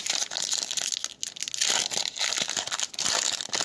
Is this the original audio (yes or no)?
yes